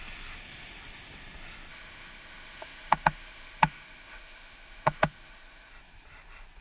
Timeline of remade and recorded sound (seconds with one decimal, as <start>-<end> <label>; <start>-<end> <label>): 0.0-1.7 recorded; 1.7-5.7 remade; 5.7-6.6 recorded